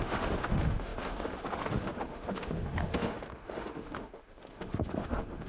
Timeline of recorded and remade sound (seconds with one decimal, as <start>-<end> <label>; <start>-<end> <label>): 0.0-5.5 remade